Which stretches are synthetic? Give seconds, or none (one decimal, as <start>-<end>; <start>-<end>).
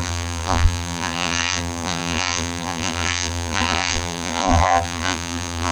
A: 0.0-5.7